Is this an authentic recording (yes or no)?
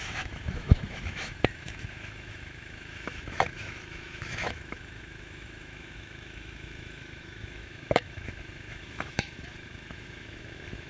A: no